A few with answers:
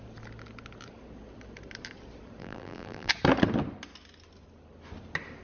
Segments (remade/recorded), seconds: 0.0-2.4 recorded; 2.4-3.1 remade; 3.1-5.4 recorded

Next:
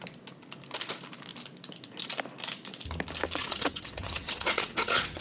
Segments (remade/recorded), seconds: 0.0-3.4 recorded; 3.4-5.2 remade

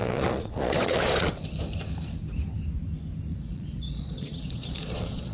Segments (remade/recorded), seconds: 0.0-1.3 remade; 1.3-3.3 recorded; 3.3-5.3 remade